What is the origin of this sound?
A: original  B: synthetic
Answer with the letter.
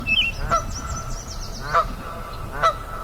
A